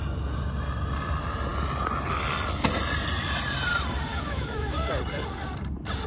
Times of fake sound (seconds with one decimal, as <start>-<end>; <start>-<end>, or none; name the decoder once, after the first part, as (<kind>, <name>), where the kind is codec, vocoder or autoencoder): 4.1-4.9 (autoencoder, DAC-VAE)